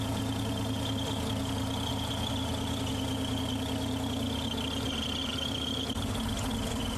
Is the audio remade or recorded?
recorded